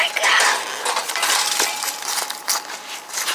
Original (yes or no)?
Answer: yes